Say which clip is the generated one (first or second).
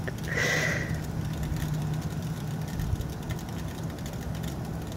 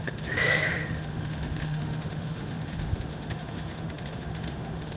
second